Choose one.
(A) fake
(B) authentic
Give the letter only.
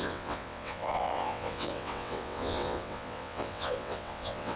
A